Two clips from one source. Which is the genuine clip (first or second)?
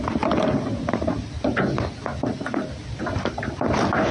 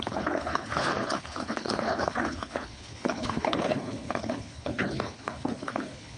first